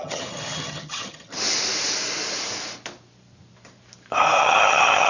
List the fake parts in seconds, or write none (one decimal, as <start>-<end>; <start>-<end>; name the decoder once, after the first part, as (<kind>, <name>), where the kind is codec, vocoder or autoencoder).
0.0-1.3 (vocoder, HiFi-GAN); 4.4-5.1